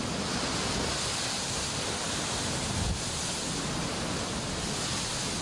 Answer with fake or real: real